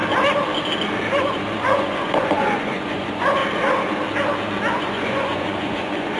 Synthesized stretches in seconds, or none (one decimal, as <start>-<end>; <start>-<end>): 1.1-3.4; 4.7-6.2